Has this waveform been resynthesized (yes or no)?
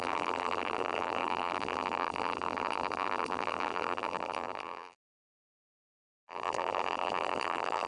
yes